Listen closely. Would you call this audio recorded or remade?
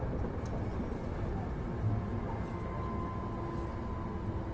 recorded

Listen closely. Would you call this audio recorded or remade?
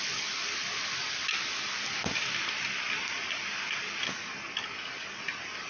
recorded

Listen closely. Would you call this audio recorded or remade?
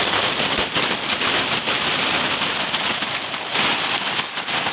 recorded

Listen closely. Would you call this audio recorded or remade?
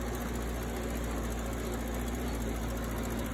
recorded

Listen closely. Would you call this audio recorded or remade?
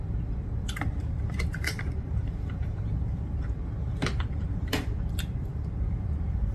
remade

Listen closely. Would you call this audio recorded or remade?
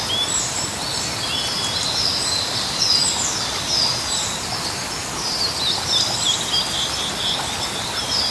recorded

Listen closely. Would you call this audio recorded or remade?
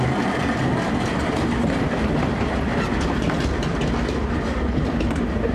recorded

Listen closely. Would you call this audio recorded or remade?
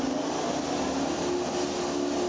recorded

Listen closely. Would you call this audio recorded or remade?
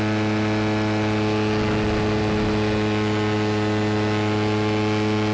recorded